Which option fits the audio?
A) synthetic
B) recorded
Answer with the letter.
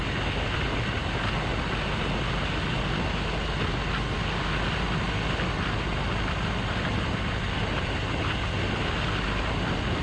B